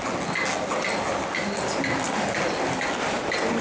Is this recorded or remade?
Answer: recorded